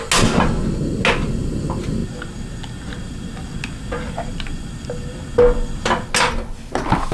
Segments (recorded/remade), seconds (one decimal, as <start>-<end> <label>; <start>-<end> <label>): 0.0-7.1 recorded